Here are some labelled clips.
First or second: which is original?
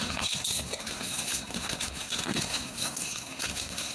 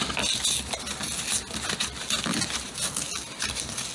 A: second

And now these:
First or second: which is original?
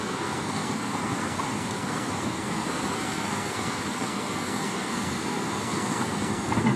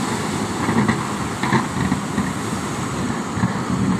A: second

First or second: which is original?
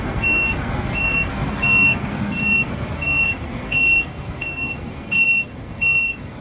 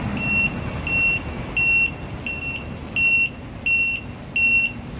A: second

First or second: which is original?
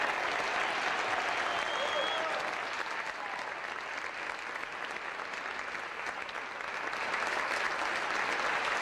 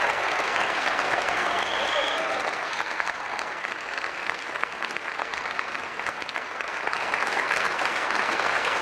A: first